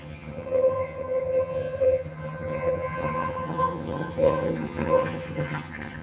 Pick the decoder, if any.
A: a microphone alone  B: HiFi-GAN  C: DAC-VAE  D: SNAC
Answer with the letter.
B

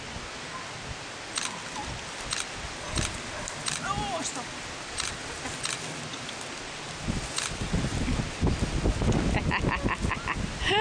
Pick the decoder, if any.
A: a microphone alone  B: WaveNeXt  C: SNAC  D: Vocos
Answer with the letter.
A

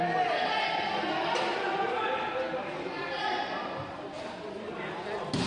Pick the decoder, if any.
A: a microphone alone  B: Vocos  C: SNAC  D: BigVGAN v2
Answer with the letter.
A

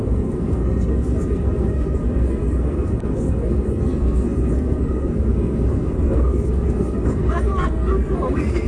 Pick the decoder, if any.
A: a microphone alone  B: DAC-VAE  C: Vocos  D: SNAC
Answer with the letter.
D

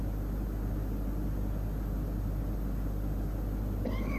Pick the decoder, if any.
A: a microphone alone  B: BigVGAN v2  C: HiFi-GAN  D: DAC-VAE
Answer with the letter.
A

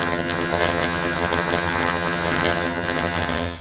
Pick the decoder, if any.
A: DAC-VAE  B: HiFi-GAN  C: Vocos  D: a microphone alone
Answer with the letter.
B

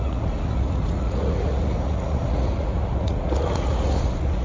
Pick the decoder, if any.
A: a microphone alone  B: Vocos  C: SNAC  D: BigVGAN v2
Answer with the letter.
B